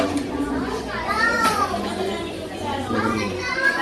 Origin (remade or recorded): remade